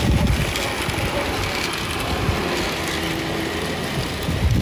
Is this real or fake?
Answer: real